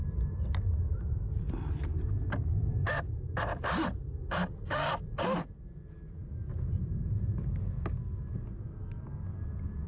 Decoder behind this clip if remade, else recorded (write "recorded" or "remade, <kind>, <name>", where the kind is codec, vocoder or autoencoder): recorded